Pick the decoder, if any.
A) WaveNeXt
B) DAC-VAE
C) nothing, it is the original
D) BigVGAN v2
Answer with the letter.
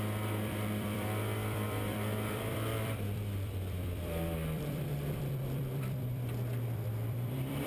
D